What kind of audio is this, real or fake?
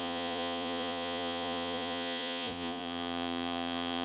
fake